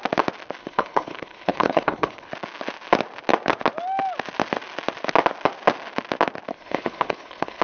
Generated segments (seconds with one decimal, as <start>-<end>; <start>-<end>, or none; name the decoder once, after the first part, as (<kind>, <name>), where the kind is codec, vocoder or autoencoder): 0.6-2.3 (codec, HILCodec); 6.5-7.6